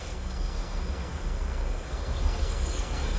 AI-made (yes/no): yes